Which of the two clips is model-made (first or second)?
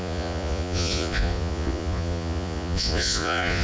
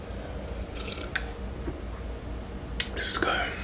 first